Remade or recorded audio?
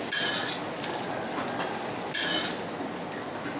recorded